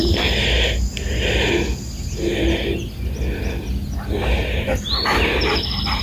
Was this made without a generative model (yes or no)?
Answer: yes